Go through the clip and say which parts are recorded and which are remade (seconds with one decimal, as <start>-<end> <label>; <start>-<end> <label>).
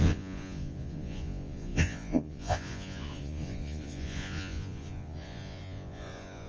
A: 0.0-6.5 remade